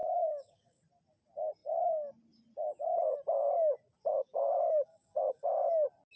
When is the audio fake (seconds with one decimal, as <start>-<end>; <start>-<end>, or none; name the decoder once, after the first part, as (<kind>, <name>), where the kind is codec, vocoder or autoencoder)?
0.0-0.8 (codec, DAC); 4.1-5.7